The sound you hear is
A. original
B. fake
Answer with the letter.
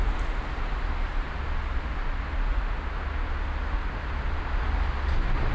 A